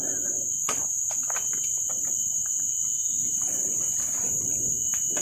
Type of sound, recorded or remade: recorded